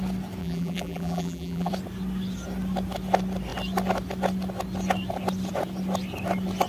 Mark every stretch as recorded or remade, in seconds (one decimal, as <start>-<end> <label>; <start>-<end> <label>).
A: 0.0-0.4 recorded; 0.4-1.7 remade; 1.7-6.7 recorded